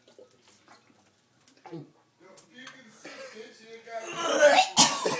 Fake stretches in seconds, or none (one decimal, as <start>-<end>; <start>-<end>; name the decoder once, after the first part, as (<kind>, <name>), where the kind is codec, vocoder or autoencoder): none